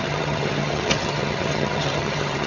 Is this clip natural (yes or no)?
no